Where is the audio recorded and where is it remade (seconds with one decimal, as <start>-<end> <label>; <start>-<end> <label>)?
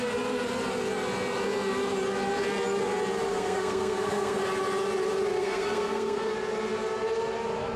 0.0-3.3 recorded; 3.3-4.4 remade; 4.4-5.4 recorded; 5.4-6.3 remade; 6.3-7.8 recorded